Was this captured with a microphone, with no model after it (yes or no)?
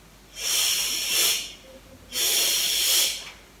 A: yes